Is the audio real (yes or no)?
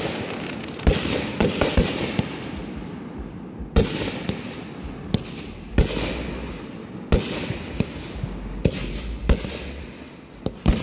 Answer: yes